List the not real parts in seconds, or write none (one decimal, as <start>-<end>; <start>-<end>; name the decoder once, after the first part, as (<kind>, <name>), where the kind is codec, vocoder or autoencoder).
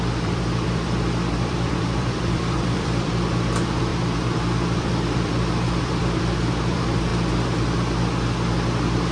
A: 0.0-7.1 (vocoder, BigVGAN v2)